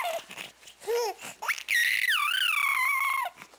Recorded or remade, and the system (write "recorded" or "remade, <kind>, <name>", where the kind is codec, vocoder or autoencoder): recorded